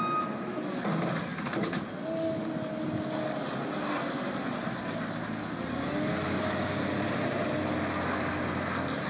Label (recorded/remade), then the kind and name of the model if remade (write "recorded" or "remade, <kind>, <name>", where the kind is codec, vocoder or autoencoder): recorded